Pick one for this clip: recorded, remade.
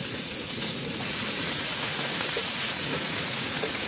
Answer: remade